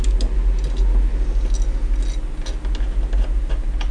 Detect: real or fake real